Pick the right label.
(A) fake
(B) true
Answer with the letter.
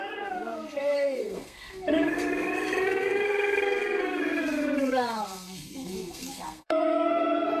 A